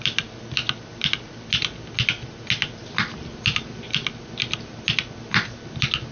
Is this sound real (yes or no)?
yes